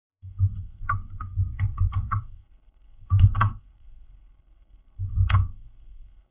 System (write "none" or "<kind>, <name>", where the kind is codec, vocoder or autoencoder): codec, SNAC